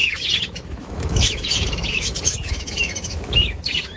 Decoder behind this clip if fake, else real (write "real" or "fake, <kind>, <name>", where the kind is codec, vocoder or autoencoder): fake, autoencoder, DAC-VAE